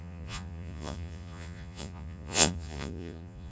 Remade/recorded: remade